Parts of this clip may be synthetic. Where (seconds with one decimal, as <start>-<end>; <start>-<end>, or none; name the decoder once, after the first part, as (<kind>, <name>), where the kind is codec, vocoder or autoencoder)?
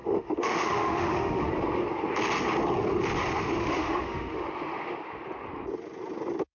0.0-1.5 (autoencoder, DAC-VAE); 3.6-5.0